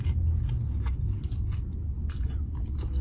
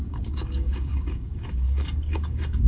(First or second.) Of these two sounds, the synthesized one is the second